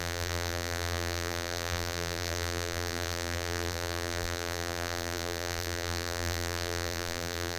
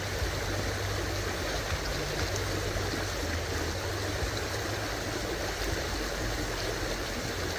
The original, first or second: second